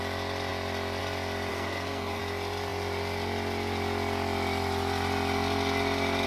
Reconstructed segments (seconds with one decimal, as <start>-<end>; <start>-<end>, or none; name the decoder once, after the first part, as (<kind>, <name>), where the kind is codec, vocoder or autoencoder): 1.5-2.2 (codec, SNAC)